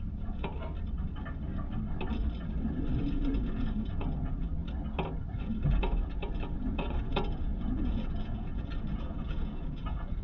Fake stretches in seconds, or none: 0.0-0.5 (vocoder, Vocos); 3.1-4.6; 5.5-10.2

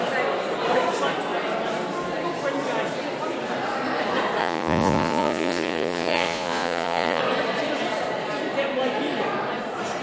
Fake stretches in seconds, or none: 4.4-7.2 (vocoder, Vocos)

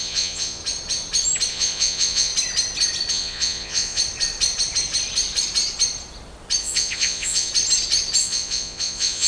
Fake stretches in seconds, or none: 0.0-0.6 (vocoder, Vocos); 1.5-2.3; 3.1-4.0; 6.6-7.5; 8.2-9.3

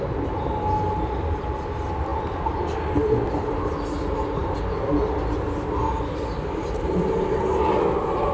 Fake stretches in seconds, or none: none

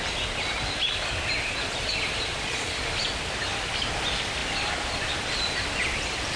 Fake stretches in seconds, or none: 2.3-2.8 (vocoder, Vocos)

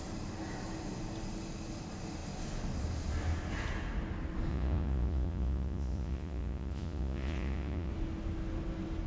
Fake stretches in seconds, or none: 4.5-7.9 (vocoder, Vocos)